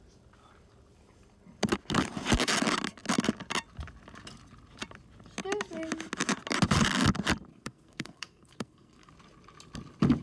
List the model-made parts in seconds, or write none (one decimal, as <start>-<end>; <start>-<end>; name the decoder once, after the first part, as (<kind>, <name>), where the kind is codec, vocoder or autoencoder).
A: 7.5-9.1 (codec, SNAC)